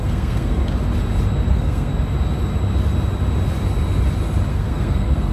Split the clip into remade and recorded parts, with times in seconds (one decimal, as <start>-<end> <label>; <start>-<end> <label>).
0.0-0.6 remade; 0.6-1.5 recorded; 1.5-1.9 remade; 1.9-4.5 recorded; 4.5-5.3 remade